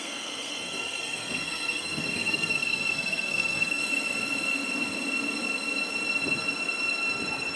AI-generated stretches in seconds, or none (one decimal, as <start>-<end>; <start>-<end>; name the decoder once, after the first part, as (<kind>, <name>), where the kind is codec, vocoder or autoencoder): 0.0-3.8 (codec, SNAC)